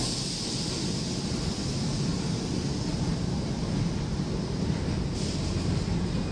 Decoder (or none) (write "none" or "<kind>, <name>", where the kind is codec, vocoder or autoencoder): none